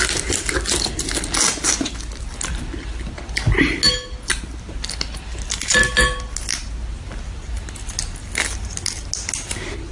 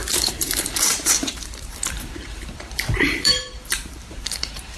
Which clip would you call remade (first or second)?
second